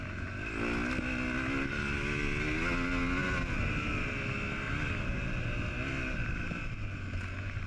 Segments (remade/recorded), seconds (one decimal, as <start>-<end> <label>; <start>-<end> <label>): 0.0-7.7 recorded